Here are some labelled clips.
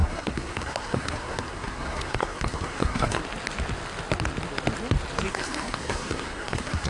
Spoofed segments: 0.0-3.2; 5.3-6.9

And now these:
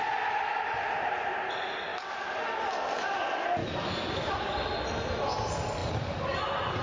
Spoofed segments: none